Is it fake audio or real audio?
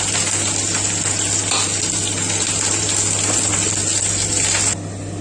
real